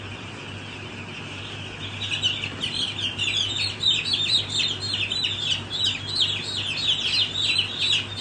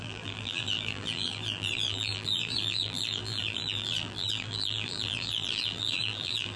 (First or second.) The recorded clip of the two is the first